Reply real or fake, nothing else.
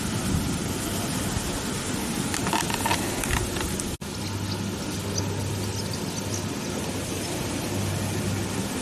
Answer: real